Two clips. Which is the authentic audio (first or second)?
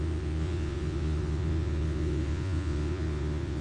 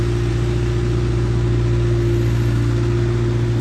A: second